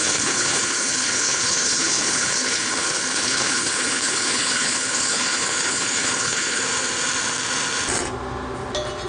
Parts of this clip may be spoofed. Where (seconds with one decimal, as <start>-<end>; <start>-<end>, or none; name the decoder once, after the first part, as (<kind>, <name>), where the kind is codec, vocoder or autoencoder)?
0.0-6.6 (codec, HILCodec)

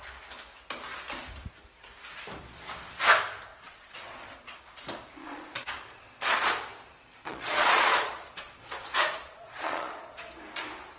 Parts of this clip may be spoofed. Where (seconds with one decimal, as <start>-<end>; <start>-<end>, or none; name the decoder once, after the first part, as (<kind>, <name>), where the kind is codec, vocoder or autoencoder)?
3.5-4.6 (vocoder, Vocos); 5.2-6.5; 7.2-10.3